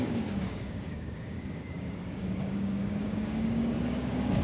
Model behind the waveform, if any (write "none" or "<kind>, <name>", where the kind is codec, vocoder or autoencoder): codec, DAC